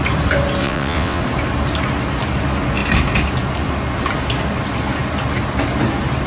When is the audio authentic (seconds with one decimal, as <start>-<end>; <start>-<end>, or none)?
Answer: 0.0-0.6; 1.2-6.3